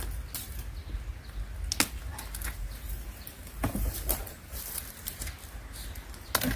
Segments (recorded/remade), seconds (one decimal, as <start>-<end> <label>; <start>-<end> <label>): 0.0-2.1 recorded; 2.1-5.2 remade; 5.2-6.6 recorded